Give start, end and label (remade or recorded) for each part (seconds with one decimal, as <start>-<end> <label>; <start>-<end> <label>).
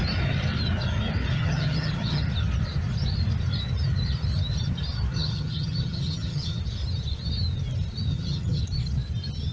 0.0-1.3 recorded; 1.3-2.2 remade; 2.2-5.1 recorded; 5.1-6.6 remade; 6.6-8.1 recorded; 8.1-8.6 remade; 8.6-9.5 recorded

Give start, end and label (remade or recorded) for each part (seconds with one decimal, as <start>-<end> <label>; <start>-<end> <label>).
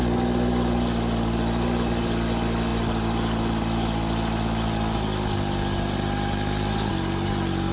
0.0-7.7 recorded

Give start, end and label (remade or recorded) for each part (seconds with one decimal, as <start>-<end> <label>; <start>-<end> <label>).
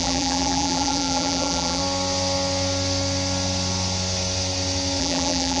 0.0-1.8 remade; 1.8-5.0 recorded; 5.0-5.6 remade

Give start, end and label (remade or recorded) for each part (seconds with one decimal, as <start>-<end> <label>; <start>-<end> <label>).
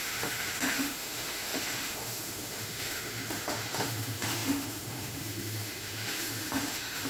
0.0-7.1 remade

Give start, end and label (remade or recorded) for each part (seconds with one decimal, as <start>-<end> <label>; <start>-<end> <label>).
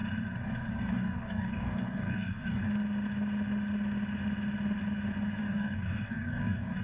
0.0-0.7 recorded; 0.7-2.6 remade; 2.6-5.4 recorded; 5.4-6.8 remade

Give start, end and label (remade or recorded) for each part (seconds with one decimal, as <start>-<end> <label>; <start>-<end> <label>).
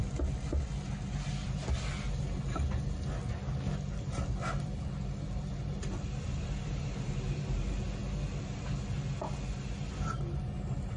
0.0-11.0 recorded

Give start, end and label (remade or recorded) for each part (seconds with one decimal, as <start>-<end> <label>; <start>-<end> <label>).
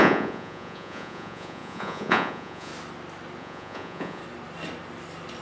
0.0-2.7 remade; 2.7-3.4 recorded; 3.4-4.2 remade; 4.2-5.4 recorded